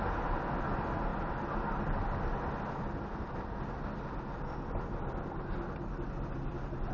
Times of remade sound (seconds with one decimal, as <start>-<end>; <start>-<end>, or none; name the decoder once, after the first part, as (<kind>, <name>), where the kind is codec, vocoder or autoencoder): none